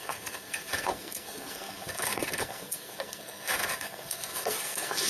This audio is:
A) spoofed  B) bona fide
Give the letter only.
A